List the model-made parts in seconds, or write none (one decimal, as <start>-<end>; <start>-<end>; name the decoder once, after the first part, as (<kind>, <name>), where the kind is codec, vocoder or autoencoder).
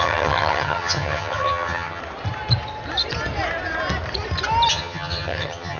0.0-2.0 (vocoder, HiFi-GAN); 4.7-5.8